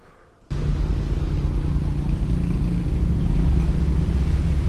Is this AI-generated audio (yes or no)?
no